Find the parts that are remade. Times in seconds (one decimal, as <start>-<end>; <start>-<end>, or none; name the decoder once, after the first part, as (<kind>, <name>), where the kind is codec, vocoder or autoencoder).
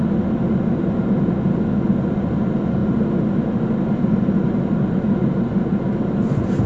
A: none